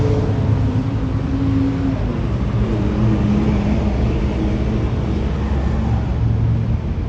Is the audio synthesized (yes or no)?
no